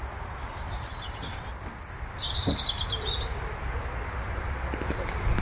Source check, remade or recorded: recorded